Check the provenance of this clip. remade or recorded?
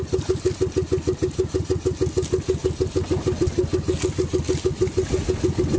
recorded